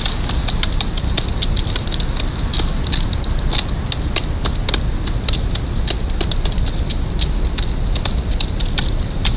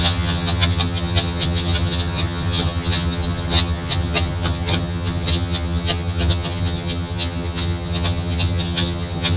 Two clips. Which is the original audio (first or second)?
first